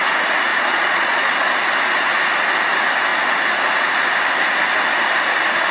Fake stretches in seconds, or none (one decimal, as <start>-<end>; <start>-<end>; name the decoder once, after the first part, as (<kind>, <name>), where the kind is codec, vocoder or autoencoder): 0.5-1.3 (vocoder, Vocos)